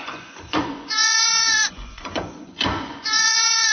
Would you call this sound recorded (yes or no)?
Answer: no